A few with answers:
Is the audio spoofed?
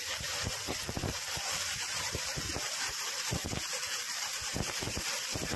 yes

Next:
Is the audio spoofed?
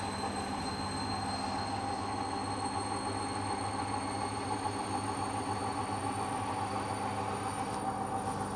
no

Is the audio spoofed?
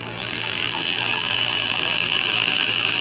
yes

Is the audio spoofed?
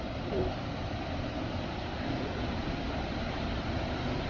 yes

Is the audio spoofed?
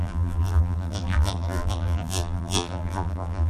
yes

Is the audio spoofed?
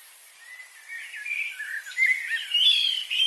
yes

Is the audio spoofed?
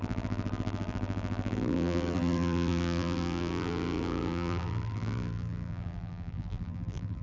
yes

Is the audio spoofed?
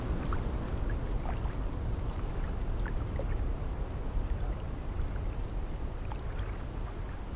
no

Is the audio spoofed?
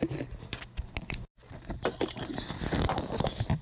no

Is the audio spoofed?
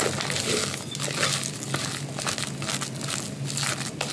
no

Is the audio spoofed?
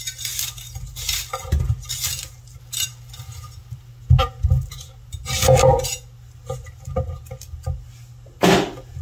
no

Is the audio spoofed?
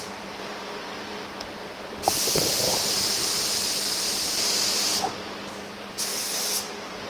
yes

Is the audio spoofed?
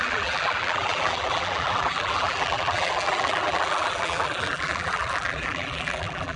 yes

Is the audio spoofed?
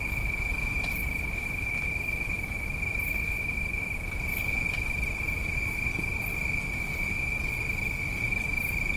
no